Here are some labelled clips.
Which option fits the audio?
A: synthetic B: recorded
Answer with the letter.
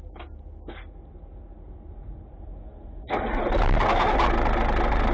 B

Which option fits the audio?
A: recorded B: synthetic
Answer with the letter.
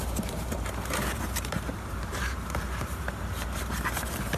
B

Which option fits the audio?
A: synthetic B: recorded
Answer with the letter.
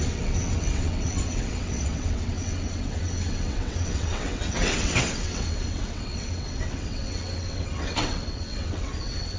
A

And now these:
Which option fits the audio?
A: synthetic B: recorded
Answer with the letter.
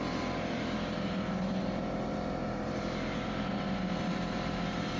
A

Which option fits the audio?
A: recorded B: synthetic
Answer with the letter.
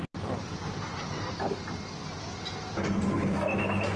A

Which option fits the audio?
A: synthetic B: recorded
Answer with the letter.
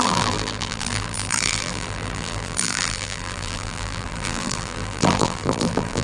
A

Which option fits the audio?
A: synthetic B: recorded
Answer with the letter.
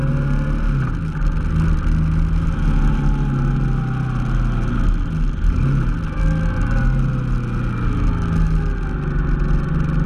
B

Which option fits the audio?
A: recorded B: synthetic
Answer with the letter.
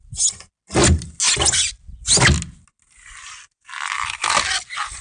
A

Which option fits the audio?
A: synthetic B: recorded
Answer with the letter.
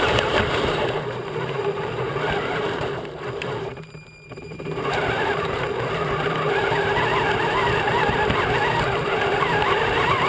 A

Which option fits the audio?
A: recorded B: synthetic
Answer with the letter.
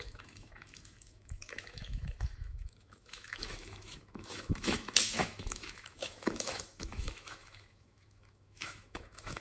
B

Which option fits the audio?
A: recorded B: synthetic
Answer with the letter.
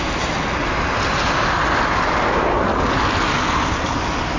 A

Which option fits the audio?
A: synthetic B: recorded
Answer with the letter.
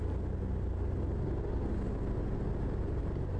B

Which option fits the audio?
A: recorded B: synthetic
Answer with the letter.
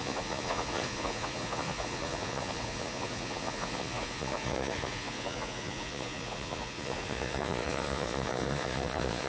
B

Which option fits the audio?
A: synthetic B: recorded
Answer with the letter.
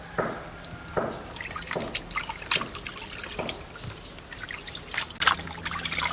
B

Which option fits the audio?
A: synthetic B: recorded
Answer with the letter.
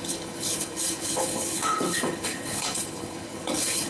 A